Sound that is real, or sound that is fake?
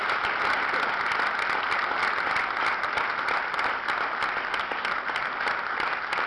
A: real